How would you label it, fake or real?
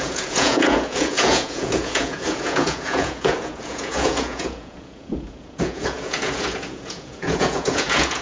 fake